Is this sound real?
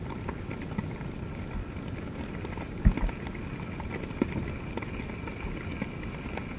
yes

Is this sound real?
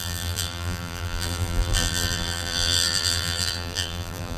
no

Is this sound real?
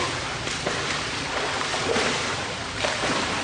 yes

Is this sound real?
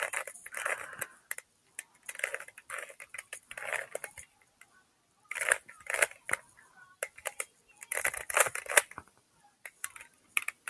yes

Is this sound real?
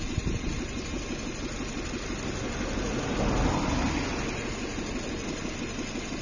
yes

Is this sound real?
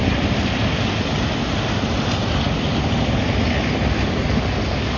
yes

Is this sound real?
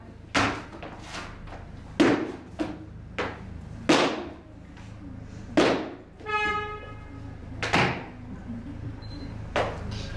yes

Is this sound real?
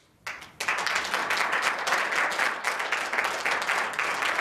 yes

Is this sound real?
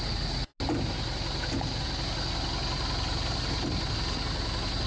yes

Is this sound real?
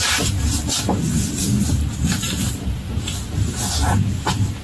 yes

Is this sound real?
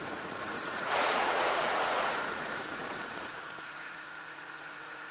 no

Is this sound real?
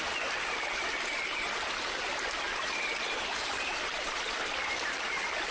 yes